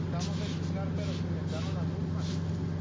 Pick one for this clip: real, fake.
real